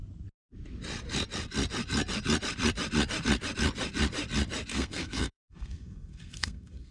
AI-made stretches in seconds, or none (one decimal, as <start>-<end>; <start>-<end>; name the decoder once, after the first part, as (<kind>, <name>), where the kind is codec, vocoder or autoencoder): 4.7-6.9 (codec, SNAC)